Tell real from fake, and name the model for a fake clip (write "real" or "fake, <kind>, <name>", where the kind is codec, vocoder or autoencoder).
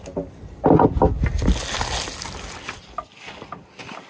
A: real